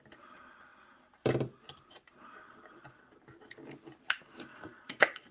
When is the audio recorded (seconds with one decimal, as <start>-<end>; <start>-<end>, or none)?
0.0-4.5